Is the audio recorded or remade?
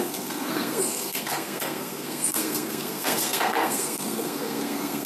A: remade